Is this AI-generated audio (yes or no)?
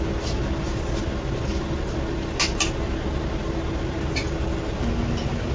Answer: no